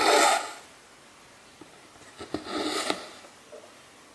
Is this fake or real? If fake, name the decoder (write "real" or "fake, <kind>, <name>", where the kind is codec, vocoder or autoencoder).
real